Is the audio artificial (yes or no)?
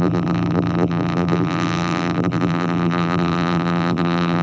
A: yes